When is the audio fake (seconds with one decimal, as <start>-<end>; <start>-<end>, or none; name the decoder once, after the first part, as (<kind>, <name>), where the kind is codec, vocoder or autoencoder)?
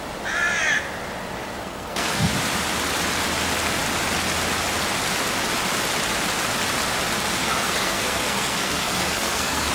1.6-2.3 (codec, SNAC); 7.4-9.7